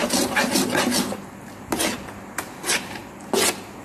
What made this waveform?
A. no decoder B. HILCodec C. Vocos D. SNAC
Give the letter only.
A